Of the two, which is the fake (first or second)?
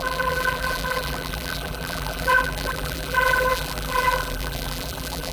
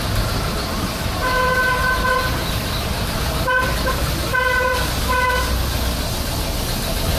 first